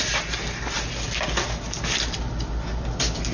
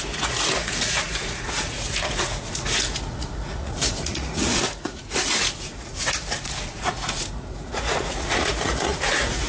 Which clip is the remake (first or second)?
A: second